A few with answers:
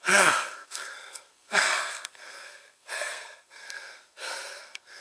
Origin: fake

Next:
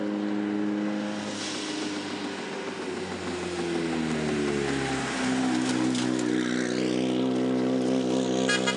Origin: real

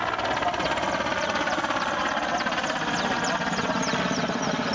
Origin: real